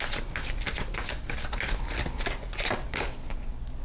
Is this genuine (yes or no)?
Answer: yes